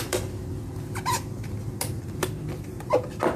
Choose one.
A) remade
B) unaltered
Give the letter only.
B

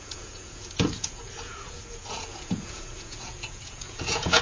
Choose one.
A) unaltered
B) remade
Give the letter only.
B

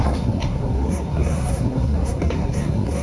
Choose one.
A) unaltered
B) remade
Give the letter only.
B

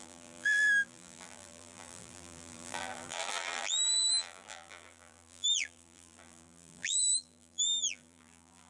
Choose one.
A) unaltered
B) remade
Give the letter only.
B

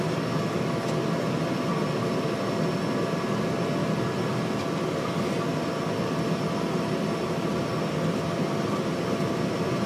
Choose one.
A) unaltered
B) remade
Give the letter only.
A